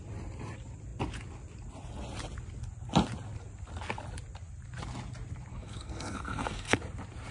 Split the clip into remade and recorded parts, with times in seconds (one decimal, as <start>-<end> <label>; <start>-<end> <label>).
0.0-5.5 recorded; 5.5-6.8 remade; 6.8-7.3 recorded